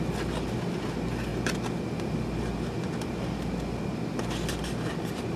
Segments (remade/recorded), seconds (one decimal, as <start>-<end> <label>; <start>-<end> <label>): 0.0-5.4 recorded